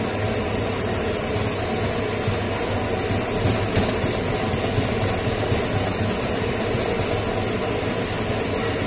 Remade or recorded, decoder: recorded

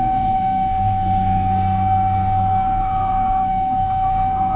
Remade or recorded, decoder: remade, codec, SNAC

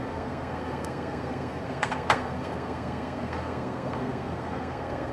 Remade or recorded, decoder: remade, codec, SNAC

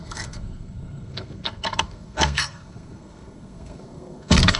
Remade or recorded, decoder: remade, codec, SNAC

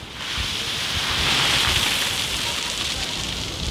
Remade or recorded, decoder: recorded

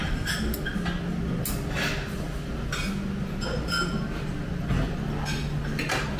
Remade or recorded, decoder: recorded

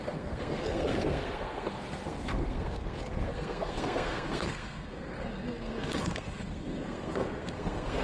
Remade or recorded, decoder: remade, codec, SNAC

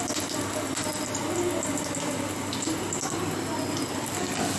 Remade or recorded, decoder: recorded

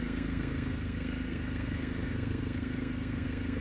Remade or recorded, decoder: remade, codec, SNAC